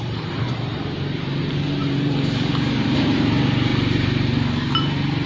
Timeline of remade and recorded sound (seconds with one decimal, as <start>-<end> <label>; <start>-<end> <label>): 0.0-3.7 remade; 3.7-5.3 recorded